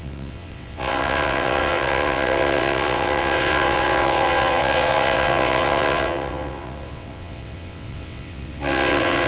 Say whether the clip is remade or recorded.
remade